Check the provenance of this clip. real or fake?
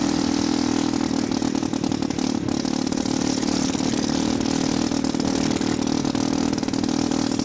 real